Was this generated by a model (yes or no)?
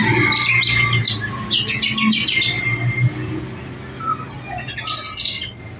no